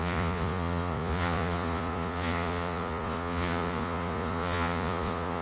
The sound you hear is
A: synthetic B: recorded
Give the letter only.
A